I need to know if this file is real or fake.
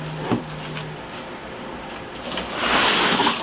fake